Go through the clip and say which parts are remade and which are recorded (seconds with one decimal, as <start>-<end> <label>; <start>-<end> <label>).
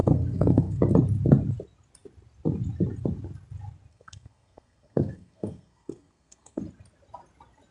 0.0-0.8 remade; 0.8-3.9 recorded; 3.9-6.6 remade; 6.6-7.7 recorded